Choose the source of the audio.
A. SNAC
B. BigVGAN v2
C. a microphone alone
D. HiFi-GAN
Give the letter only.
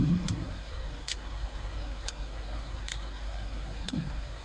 A